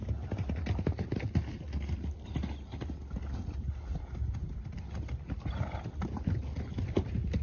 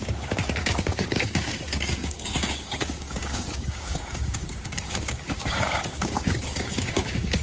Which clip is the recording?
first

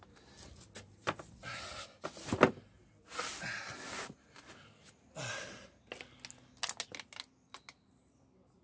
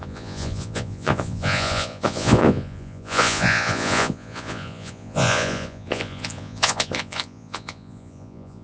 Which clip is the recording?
first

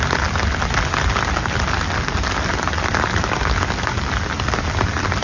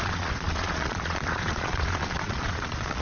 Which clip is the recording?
first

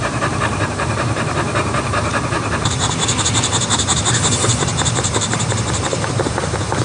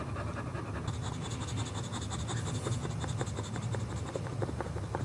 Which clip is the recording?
second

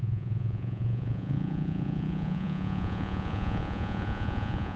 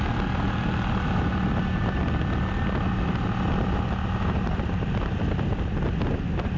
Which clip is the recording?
second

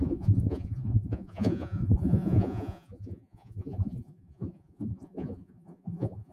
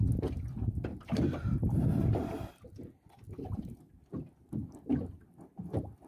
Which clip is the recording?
second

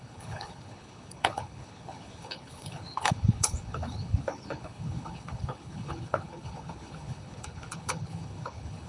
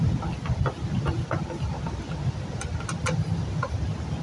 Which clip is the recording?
second